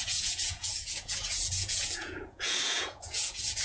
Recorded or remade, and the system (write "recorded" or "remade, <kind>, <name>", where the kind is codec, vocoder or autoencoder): remade, vocoder, Vocos